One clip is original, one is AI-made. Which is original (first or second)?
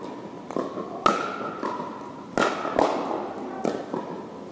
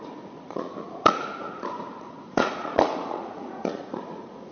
first